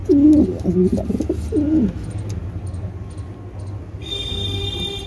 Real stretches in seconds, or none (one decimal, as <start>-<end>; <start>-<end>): 0.0-4.0; 4.6-5.1